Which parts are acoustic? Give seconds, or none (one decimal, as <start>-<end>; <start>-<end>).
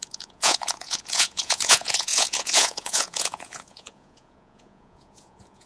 none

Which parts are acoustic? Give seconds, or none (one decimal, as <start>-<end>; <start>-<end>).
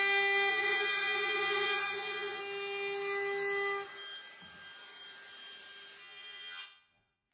0.0-0.5; 2.4-6.0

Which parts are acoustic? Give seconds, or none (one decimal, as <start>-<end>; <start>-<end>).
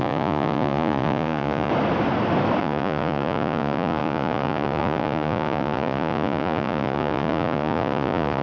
1.7-2.6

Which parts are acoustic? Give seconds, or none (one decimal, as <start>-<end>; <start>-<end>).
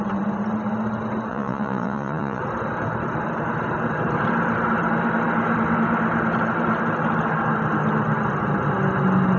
0.0-1.3; 2.4-9.4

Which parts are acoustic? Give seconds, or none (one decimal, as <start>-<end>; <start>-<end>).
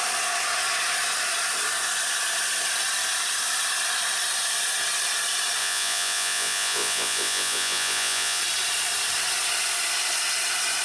0.0-5.6; 8.4-10.8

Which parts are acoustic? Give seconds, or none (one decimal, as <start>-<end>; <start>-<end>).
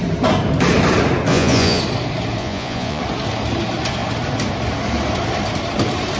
0.0-1.3; 1.8-2.4; 3.0-6.2